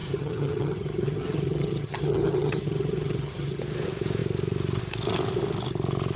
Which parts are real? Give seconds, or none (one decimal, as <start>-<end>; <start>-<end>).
3.6-6.2